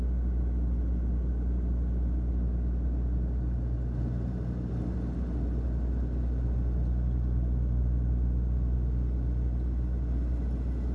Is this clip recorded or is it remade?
recorded